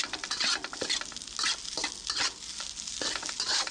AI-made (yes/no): no